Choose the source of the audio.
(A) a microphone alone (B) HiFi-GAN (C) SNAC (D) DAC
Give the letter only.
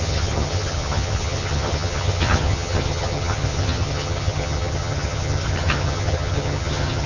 B